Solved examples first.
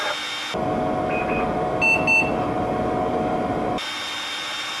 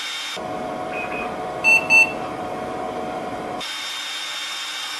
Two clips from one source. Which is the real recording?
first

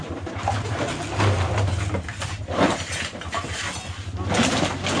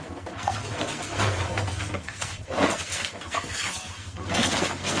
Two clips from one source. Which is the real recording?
first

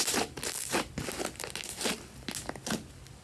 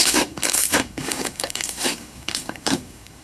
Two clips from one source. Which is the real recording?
first